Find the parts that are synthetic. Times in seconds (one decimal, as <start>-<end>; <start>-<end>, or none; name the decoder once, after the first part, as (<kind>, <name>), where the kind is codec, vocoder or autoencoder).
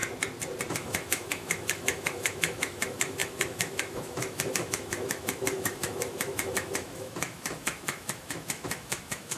0.7-9.4 (autoencoder, DAC-VAE)